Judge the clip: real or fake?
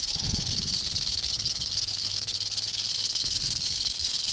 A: fake